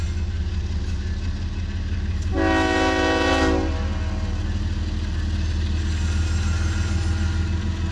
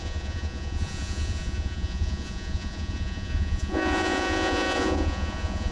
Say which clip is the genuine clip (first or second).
first